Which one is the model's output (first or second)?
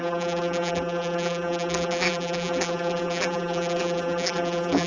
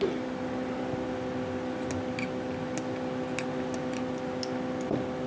first